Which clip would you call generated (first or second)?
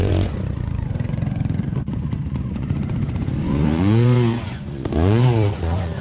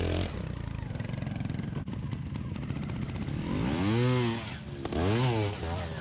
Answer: first